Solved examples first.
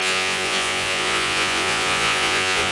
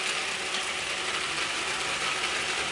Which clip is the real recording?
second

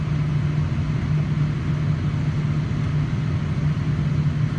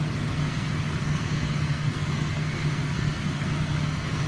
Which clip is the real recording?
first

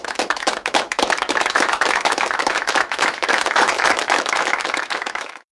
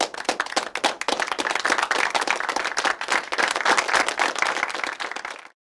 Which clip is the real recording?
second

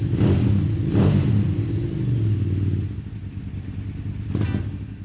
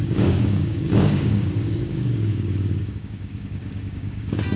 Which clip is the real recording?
first